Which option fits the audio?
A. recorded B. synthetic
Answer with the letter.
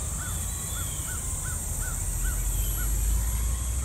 A